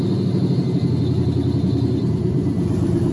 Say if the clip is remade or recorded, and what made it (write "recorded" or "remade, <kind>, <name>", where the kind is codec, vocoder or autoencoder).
recorded